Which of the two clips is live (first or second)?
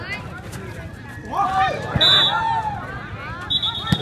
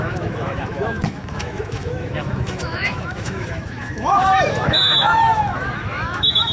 first